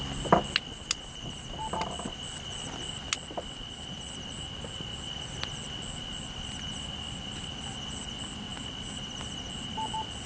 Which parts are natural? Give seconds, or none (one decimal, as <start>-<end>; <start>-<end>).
0.0-10.3